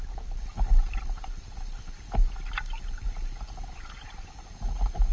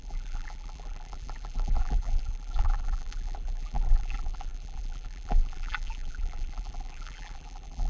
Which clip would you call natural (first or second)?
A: first